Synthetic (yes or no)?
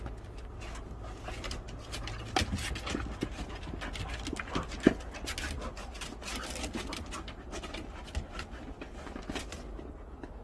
no